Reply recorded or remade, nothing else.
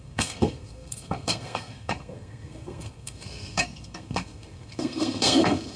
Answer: remade